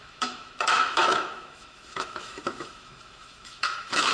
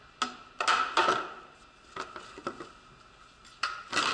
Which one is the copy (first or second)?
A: first